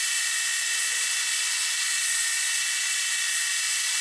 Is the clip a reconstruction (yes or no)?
yes